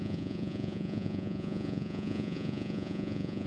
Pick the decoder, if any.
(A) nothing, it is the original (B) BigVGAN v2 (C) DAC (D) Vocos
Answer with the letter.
D